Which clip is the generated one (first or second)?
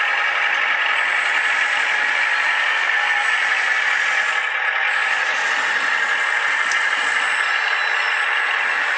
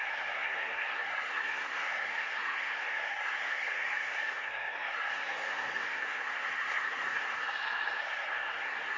second